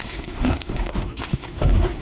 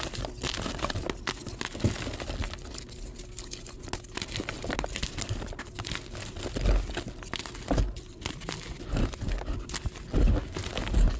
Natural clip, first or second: second